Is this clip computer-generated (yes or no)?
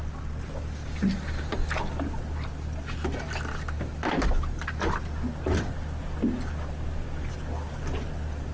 no